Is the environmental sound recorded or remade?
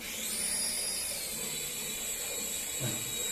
recorded